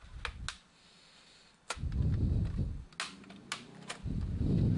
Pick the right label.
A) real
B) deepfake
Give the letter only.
A